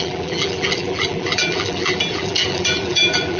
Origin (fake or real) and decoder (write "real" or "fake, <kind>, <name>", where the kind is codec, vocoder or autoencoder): fake, vocoder, BigVGAN v2